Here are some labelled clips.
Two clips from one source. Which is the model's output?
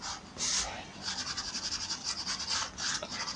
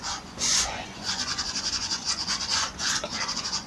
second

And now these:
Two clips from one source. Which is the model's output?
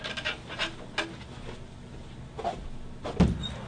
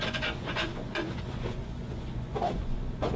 second